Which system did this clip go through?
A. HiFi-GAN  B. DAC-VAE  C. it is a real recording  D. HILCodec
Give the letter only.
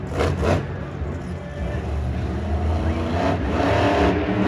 C